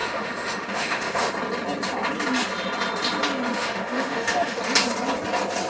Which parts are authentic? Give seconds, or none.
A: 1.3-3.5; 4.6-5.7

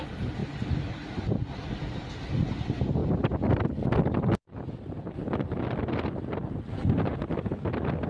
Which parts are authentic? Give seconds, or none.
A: 0.0-8.1

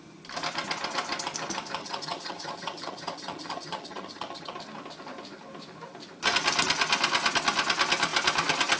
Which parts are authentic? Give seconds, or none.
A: 0.0-1.8; 4.5-8.8

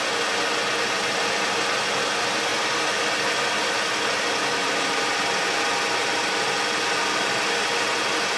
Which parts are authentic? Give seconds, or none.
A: 0.0-2.5; 5.6-6.0; 7.2-8.4

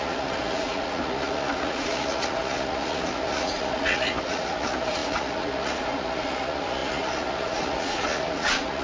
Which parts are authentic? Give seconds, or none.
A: none

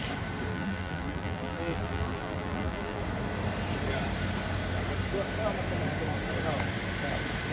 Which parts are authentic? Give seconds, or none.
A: 0.0-0.5; 3.0-7.5